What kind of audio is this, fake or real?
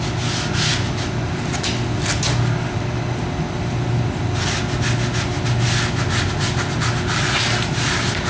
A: real